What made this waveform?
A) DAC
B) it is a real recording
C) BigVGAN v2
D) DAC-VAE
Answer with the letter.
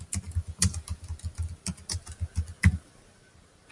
B